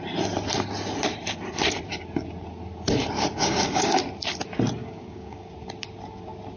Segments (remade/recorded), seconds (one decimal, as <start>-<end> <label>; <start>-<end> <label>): 0.0-3.3 recorded; 3.3-4.0 remade; 4.0-4.8 recorded; 4.8-5.5 remade; 5.5-6.6 recorded